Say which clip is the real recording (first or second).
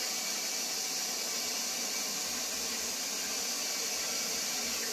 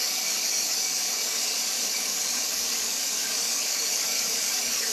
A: first